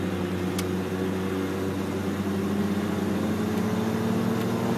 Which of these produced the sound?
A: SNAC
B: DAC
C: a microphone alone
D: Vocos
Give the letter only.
C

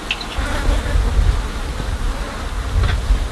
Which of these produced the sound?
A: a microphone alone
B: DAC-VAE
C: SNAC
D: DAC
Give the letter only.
A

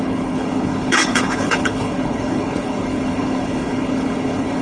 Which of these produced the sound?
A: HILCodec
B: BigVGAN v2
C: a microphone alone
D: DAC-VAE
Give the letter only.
A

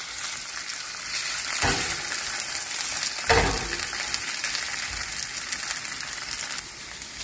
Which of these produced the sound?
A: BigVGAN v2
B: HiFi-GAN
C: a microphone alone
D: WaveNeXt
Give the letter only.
C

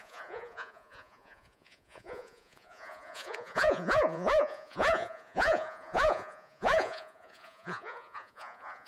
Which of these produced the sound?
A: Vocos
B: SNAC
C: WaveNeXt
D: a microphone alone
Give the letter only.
A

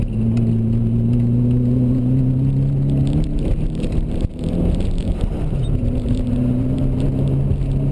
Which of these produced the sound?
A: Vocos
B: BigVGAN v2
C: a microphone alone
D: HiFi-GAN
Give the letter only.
B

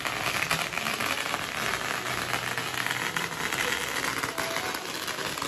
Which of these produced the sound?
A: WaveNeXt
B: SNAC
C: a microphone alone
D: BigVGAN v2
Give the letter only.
C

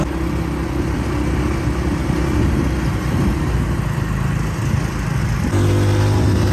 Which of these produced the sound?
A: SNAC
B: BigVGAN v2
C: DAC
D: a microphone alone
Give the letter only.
D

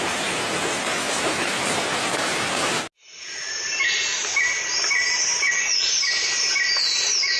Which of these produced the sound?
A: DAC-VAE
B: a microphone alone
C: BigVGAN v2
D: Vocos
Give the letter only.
B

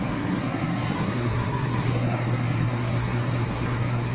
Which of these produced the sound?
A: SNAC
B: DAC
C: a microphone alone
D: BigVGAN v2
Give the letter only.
A